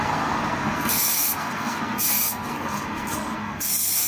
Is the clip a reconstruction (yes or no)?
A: yes